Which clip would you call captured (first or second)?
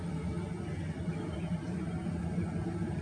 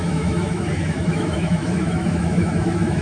first